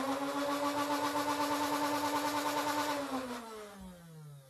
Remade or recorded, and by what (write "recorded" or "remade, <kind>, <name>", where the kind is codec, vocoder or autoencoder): recorded